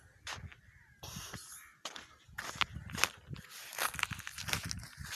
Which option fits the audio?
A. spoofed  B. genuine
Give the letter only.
B